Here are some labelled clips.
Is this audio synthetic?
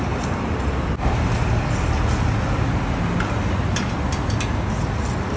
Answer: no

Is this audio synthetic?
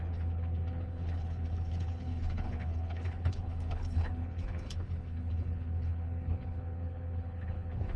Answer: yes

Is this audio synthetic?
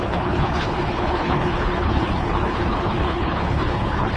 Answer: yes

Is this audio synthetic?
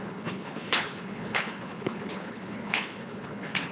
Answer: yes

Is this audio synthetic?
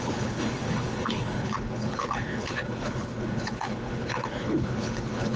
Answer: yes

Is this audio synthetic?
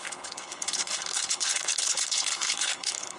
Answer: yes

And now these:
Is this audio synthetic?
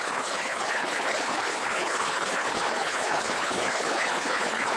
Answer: yes